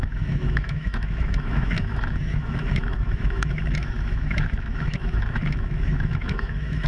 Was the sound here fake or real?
fake